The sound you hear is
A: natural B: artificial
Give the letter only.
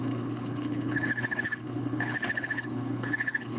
B